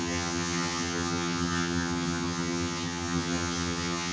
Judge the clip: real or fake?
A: fake